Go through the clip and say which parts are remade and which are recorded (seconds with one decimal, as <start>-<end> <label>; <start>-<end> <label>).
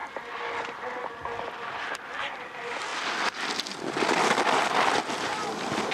0.0-2.0 recorded; 2.0-2.9 remade; 2.9-4.9 recorded; 4.9-5.9 remade